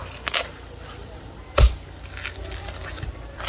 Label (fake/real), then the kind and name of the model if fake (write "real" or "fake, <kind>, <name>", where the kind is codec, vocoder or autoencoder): real